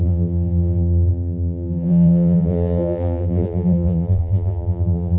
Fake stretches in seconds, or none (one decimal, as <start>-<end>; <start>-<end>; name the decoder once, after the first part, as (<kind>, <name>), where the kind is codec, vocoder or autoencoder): 0.0-5.2 (vocoder, BigVGAN v2)